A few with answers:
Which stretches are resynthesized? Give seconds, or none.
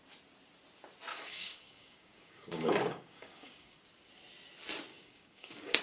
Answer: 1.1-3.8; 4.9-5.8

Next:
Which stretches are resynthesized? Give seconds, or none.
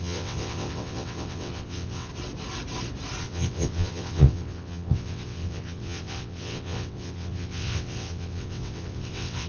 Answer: 0.0-2.1; 3.2-9.5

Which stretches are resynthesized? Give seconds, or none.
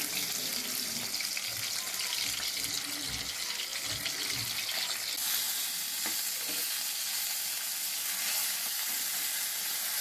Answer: none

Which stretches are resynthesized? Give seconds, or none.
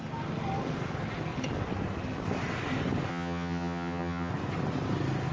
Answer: 3.1-4.3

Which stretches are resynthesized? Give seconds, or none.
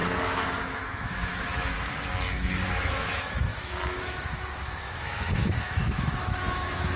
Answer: 0.0-7.0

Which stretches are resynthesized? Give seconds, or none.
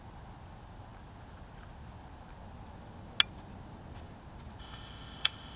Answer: 4.6-5.6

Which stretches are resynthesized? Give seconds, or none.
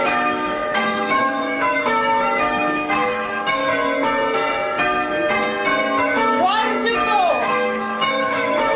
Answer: 0.0-3.6; 6.0-6.6; 7.3-8.8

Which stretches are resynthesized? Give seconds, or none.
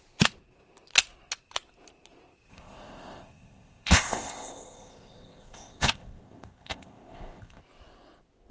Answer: 2.5-7.6